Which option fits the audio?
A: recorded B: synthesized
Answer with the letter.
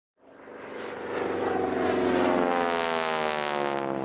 A